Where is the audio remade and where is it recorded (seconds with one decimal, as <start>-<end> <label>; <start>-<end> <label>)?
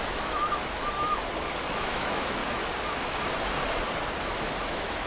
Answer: 0.0-1.2 remade; 1.2-1.7 recorded; 1.7-2.4 remade; 2.4-4.6 recorded; 4.6-5.1 remade